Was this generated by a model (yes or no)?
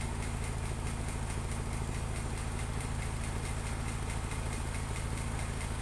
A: no